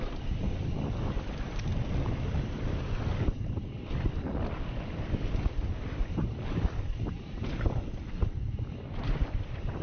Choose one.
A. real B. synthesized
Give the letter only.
A